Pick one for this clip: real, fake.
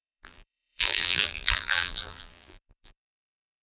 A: fake